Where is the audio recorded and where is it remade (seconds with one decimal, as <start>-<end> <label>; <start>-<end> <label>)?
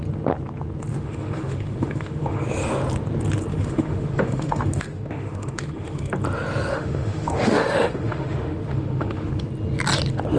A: 0.0-0.9 recorded; 0.9-2.4 remade; 2.4-3.5 recorded; 3.5-6.1 remade; 6.1-6.7 recorded; 6.7-9.3 remade; 9.3-10.4 recorded